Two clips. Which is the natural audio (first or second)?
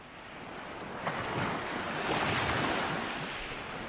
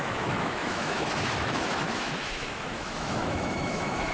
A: first